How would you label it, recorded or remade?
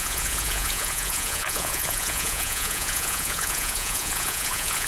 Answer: remade